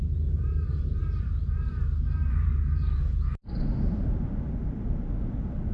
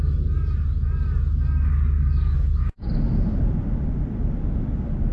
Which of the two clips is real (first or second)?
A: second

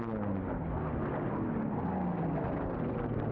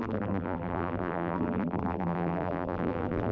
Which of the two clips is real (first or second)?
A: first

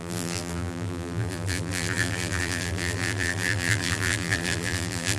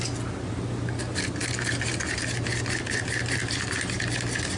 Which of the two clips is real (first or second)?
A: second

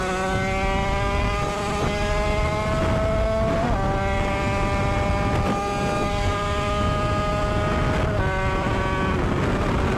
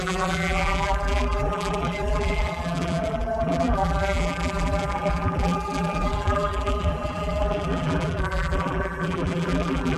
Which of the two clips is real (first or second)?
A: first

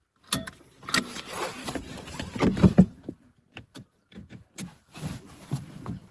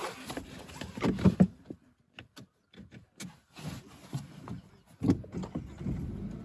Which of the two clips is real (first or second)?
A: second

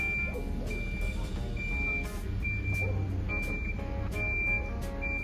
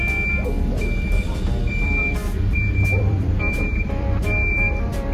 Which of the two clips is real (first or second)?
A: first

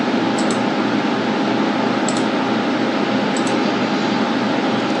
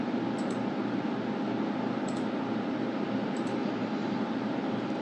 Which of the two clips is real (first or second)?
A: first